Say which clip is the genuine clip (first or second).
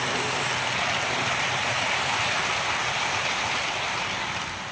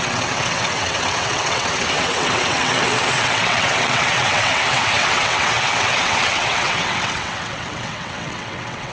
first